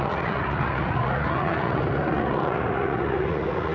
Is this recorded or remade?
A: remade